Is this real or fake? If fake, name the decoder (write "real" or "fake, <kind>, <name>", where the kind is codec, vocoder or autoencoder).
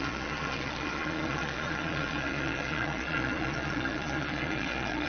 fake, vocoder, Vocos